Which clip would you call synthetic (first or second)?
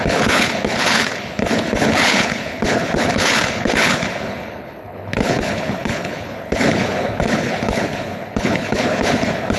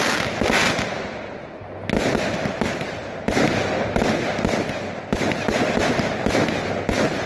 first